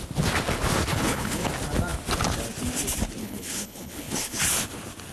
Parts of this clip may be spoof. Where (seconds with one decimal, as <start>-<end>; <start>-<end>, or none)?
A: 0.9-1.5; 3.2-4.4